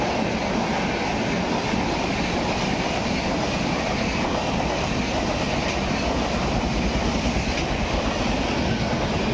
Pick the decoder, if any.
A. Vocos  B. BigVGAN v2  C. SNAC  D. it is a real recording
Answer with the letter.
D